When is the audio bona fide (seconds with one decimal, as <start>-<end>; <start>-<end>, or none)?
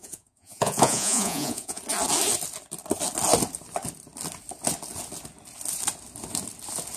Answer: 1.8-7.0